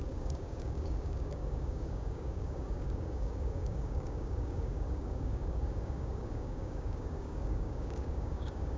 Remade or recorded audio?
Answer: remade